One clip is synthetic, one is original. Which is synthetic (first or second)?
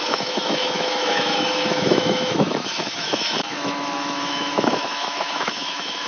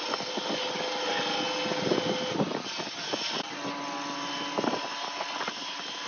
first